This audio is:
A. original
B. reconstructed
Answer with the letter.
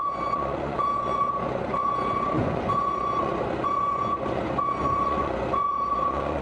B